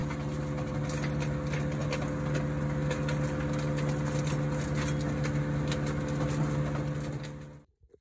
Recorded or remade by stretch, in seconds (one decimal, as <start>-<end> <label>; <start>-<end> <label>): 0.0-8.0 recorded